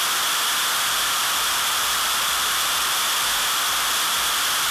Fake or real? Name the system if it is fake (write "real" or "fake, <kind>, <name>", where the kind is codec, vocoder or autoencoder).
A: real